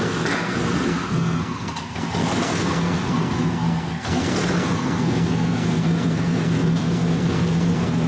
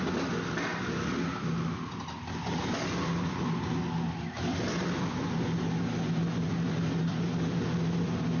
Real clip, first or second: second